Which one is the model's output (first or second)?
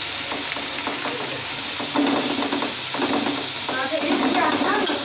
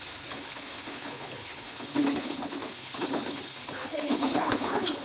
second